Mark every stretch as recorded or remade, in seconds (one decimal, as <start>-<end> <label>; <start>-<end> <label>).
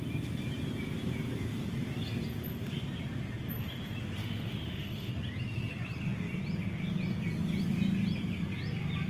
0.0-4.2 recorded; 4.2-5.1 remade; 5.1-9.1 recorded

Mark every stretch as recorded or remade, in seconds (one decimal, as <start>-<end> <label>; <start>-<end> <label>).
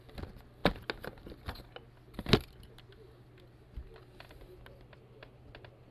0.0-5.9 recorded